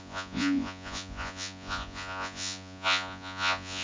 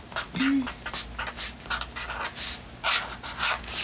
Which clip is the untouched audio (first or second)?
second